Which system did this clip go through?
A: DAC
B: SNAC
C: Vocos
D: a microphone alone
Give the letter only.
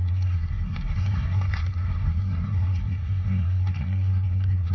B